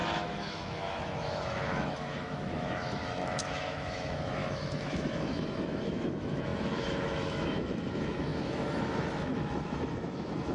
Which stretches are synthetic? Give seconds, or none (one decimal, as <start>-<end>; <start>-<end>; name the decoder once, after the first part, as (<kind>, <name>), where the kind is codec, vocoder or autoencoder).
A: 0.0-10.5 (autoencoder, DAC-VAE)